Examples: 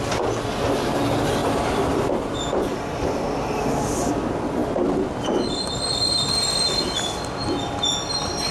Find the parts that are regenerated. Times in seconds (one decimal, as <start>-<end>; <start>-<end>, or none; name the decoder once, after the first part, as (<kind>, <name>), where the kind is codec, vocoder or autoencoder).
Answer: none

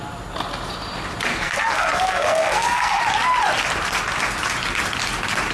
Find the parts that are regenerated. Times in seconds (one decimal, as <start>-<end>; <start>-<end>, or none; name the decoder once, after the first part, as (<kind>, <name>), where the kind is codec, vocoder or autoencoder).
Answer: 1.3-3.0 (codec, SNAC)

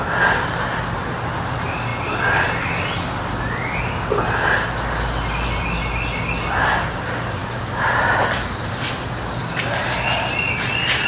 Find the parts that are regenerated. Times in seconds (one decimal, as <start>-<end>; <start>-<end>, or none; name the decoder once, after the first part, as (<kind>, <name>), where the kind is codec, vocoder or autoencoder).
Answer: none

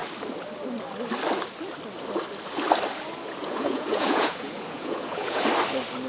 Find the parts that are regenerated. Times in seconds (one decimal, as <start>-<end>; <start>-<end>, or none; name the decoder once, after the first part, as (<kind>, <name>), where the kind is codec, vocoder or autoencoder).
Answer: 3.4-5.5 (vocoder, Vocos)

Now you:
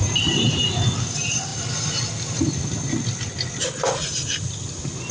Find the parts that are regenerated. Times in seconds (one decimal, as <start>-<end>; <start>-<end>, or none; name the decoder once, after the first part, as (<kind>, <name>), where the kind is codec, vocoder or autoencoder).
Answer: none

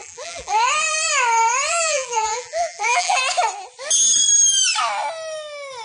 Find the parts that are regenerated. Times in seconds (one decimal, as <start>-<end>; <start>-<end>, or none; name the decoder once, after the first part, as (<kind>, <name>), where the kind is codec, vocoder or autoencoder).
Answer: 0.0-0.7 (vocoder, BigVGAN v2); 1.7-3.2

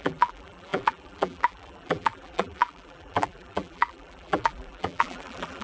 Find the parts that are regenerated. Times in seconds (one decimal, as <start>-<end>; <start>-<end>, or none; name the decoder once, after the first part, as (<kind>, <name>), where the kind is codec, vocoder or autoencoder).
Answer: 0.0-5.6 (vocoder, BigVGAN v2)

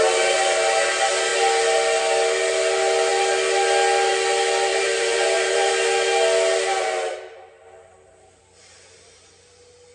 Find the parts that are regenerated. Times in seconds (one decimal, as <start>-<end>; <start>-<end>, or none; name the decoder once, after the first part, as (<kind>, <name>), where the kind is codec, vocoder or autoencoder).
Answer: 4.7-5.7 (vocoder, BigVGAN v2)